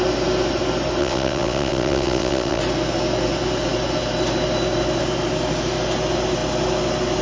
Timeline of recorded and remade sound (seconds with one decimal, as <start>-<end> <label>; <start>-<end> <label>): 0.0-1.0 recorded; 1.0-2.6 remade; 2.6-7.2 recorded